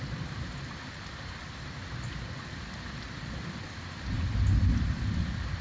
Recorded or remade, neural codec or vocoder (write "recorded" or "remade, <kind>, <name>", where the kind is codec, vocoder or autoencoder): recorded